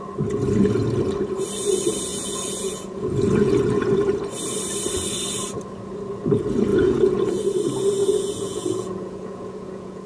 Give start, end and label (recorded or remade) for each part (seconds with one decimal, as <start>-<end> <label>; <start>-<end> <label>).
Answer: 0.0-2.1 recorded; 2.1-3.9 remade; 3.9-6.7 recorded; 6.7-7.4 remade; 7.4-8.0 recorded; 8.0-10.1 remade